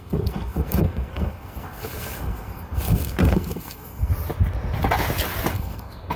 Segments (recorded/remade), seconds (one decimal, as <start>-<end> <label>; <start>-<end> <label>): 0.0-4.1 remade; 4.1-5.5 recorded; 5.5-6.2 remade